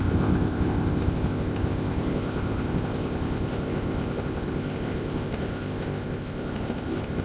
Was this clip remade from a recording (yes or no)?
yes